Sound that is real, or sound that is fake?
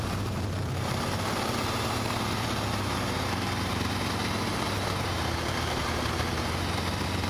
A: fake